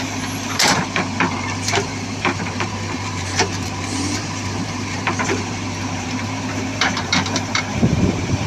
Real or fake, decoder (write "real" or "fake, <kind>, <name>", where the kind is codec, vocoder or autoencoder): fake, vocoder, BigVGAN v2